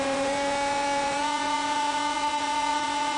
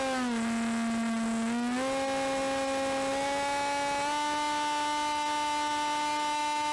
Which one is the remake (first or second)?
first